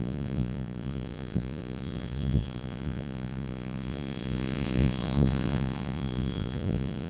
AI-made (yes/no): yes